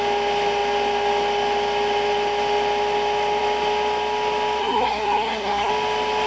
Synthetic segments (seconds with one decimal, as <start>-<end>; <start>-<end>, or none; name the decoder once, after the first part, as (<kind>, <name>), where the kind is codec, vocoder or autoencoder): 4.6-5.7 (codec, SNAC)